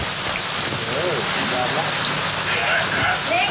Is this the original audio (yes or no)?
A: yes